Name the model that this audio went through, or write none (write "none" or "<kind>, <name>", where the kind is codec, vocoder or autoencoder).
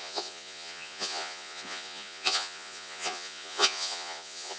vocoder, Vocos